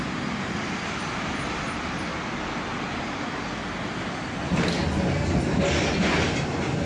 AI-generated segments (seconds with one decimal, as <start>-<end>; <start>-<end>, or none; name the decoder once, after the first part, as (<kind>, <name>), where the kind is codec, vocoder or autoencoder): none